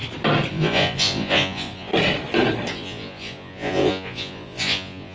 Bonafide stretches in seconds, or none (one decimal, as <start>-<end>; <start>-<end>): 0.0-0.5; 1.9-2.7